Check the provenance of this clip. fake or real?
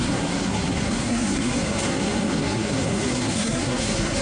fake